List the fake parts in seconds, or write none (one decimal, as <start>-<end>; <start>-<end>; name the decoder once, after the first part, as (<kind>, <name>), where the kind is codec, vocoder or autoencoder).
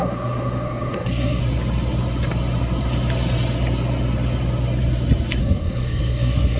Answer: 0.0-1.4 (codec, SNAC); 5.4-6.6